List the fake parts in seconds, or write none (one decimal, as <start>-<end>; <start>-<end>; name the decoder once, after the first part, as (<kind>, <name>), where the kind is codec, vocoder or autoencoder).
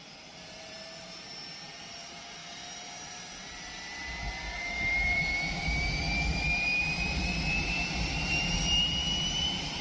0.0-9.8 (vocoder, BigVGAN v2)